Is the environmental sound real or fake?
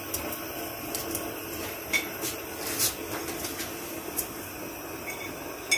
real